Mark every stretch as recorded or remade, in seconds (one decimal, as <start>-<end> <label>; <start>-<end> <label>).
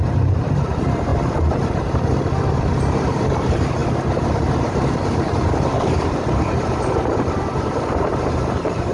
0.0-1.1 remade; 1.1-2.6 recorded; 2.6-3.8 remade; 3.8-4.5 recorded; 4.5-8.9 remade